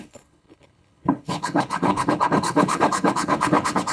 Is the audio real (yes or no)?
no